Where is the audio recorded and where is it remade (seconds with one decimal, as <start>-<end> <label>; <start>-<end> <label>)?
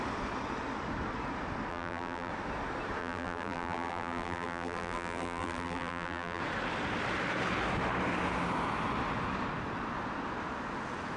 0.0-1.7 recorded; 1.7-2.3 remade; 2.3-3.0 recorded; 3.0-6.4 remade; 6.4-11.2 recorded